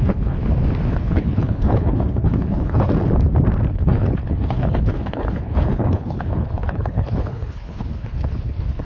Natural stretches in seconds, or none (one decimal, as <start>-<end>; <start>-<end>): 0.4-0.9; 2.9-3.7